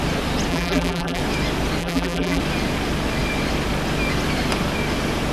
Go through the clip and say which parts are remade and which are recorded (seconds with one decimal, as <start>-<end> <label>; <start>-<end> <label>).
0.0-0.5 recorded; 0.5-1.2 remade; 1.2-1.8 recorded; 1.8-2.4 remade; 2.4-5.3 recorded